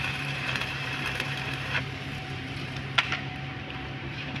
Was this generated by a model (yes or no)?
yes